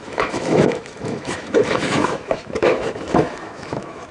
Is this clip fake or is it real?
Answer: fake